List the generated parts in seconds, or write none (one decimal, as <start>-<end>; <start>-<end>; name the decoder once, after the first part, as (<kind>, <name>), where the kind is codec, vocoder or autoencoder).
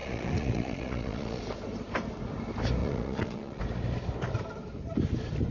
0.0-1.4 (vocoder, Vocos); 2.8-3.6